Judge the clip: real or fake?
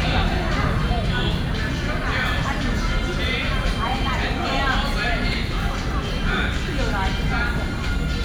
real